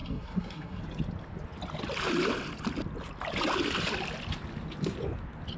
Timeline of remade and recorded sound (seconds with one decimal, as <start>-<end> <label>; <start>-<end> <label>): 0.0-0.8 remade; 0.8-5.6 recorded